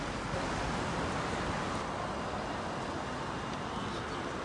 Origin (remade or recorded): recorded